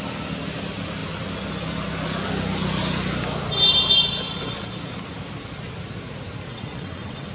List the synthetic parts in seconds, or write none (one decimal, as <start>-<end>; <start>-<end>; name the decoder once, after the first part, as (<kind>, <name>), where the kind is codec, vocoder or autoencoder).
6.5-7.3 (vocoder, WaveNeXt)